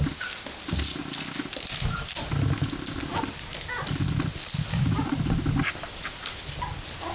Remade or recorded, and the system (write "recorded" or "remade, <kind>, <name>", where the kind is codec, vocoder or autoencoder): recorded